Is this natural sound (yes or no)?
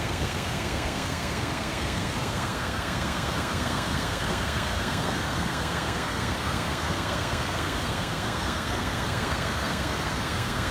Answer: no